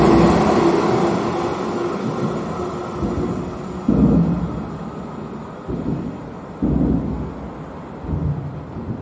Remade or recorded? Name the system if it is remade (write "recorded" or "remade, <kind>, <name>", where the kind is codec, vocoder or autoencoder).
recorded